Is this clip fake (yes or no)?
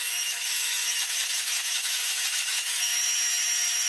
yes